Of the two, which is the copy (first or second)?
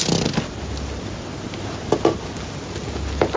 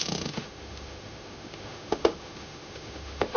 second